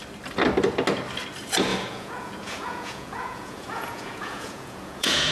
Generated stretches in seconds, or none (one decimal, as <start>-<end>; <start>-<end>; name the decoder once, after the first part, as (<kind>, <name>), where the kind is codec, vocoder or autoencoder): 1.7-5.3 (vocoder, Vocos)